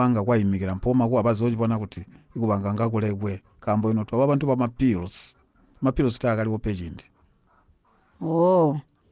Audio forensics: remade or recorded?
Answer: recorded